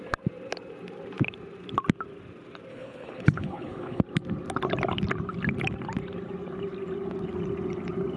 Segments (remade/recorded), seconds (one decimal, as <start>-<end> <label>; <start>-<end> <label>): 0.0-2.7 recorded; 2.7-4.0 remade; 4.0-8.2 recorded